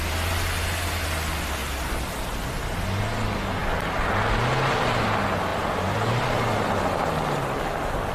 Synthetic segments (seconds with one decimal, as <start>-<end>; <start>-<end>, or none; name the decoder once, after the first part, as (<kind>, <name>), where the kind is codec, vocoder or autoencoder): none